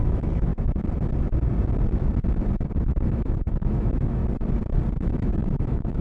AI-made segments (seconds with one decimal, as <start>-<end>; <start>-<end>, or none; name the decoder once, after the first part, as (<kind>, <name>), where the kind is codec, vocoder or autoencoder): 0.0-0.5 (autoencoder, DAC-VAE); 2.8-4.2; 4.9-6.0